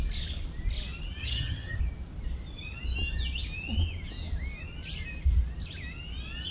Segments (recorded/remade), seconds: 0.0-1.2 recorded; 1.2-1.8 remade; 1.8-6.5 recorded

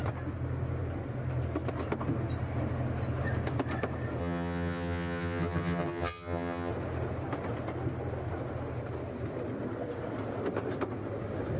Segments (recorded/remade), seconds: 0.0-4.2 recorded; 4.2-6.7 remade; 6.7-11.6 recorded

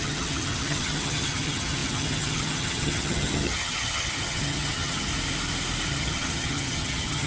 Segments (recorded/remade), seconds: 0.0-5.1 remade; 5.1-5.9 recorded; 5.9-7.3 remade

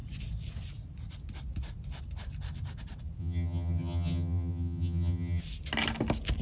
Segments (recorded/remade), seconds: 0.0-3.2 recorded; 3.2-5.4 remade; 5.4-6.4 recorded

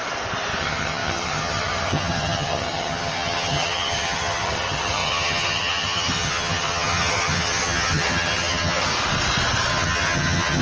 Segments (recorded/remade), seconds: 0.0-0.6 recorded; 0.6-8.9 remade; 8.9-9.7 recorded; 9.7-10.6 remade

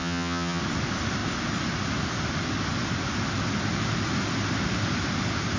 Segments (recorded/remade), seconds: 0.0-0.6 remade; 0.6-5.6 recorded

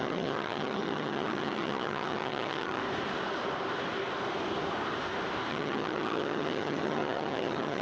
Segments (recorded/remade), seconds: 0.0-2.8 remade; 2.8-5.5 recorded; 5.5-7.8 remade

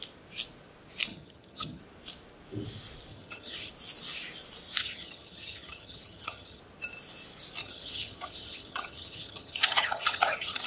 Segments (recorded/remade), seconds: 0.0-1.1 recorded; 1.1-1.8 remade; 1.8-3.1 recorded; 3.1-3.7 remade; 3.7-4.8 recorded; 4.8-6.6 remade; 6.6-7.6 recorded; 7.6-10.7 remade